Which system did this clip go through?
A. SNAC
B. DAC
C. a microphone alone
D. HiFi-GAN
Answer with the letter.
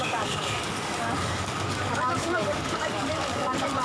B